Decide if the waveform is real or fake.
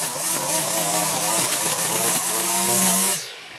fake